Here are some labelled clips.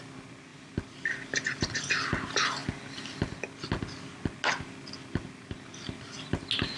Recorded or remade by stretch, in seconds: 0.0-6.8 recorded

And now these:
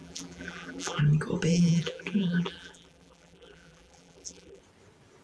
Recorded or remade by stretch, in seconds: 0.0-1.0 remade; 1.0-1.5 recorded; 1.5-4.6 remade; 4.6-5.2 recorded

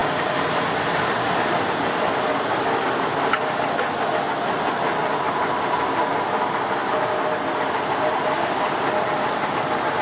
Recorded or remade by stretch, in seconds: 0.0-2.1 remade; 2.1-10.0 recorded

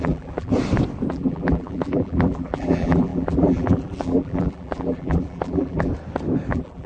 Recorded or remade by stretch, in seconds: 0.0-0.5 remade; 0.5-1.1 recorded; 1.1-5.9 remade; 5.9-6.5 recorded; 6.5-6.9 remade

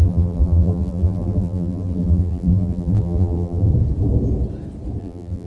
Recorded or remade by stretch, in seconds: 0.0-3.7 remade; 3.7-5.0 recorded; 5.0-5.5 remade

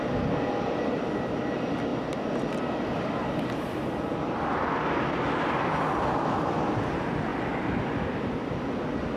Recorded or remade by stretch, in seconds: 0.0-9.2 recorded